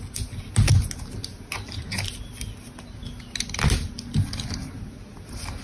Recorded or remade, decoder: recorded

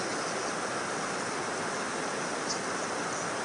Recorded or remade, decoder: recorded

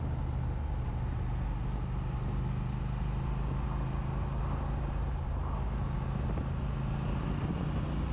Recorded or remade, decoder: recorded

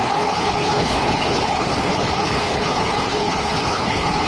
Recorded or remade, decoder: remade, codec, HILCodec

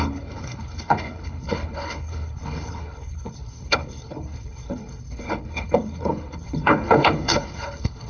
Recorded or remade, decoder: remade, codec, HILCodec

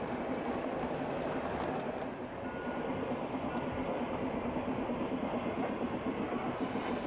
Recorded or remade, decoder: recorded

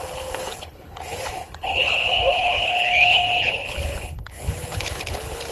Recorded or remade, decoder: remade, codec, HILCodec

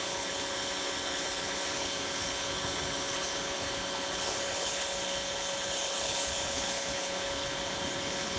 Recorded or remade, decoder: remade, codec, HILCodec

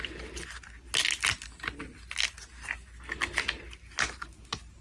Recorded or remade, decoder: recorded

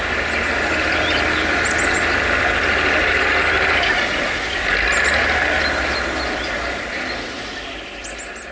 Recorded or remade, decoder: recorded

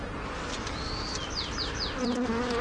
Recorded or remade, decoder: recorded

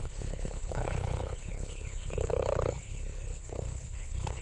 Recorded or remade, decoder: remade, codec, HILCodec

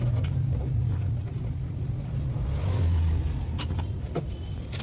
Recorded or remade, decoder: recorded